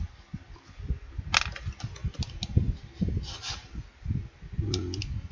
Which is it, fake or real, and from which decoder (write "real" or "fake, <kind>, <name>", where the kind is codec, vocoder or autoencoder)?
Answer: real